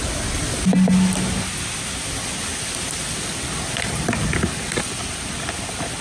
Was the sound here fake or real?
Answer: real